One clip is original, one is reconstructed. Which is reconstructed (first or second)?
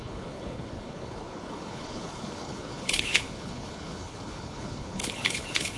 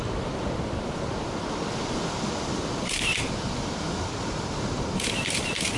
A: first